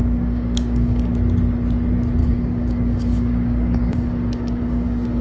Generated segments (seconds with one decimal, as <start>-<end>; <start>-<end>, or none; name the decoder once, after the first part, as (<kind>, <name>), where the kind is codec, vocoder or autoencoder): 0.0-1.1 (codec, DAC); 2.2-5.2